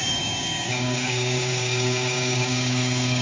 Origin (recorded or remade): remade